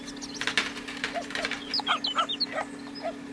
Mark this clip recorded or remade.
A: recorded